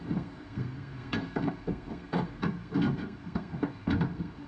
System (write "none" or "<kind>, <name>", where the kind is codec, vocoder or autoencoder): codec, SNAC